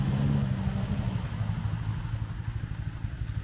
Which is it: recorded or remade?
recorded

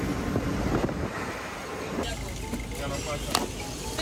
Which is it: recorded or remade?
recorded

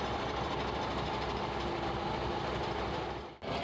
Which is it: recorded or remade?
recorded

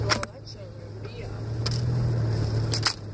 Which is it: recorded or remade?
recorded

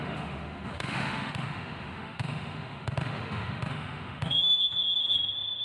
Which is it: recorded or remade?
remade